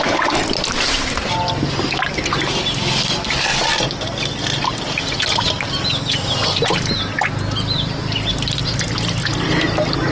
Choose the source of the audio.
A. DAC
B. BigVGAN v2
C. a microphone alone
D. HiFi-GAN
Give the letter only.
C